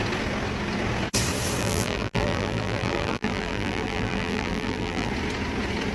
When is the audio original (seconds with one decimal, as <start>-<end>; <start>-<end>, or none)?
0.0-1.6; 5.1-5.9

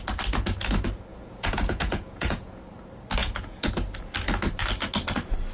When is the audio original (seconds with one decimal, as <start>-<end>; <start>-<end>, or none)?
0.0-1.1; 2.6-3.2; 3.7-5.5